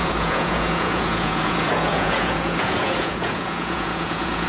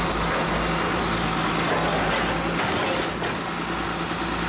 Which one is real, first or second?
second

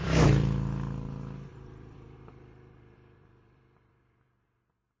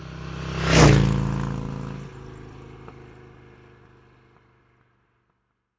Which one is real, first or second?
second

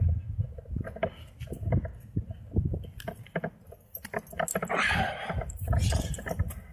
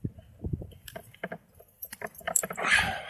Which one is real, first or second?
first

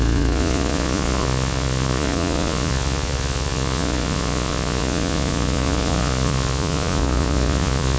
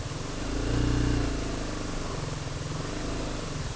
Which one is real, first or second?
second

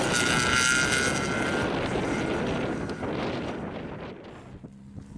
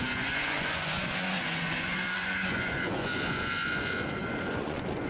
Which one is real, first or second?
first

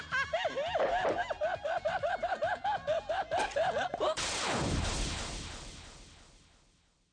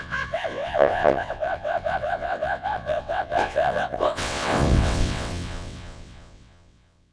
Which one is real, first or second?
first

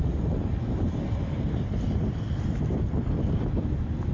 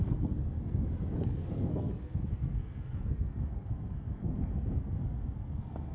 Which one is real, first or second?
first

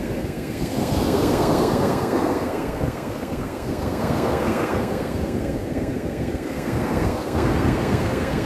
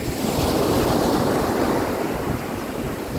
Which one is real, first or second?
second